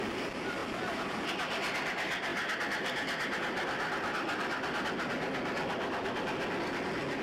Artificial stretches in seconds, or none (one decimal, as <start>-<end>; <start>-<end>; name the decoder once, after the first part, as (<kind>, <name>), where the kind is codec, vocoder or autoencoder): none